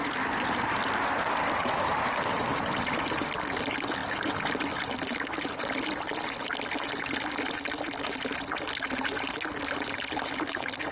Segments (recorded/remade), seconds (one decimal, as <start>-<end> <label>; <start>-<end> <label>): 0.0-10.9 recorded